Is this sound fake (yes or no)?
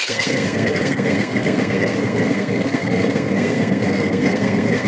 yes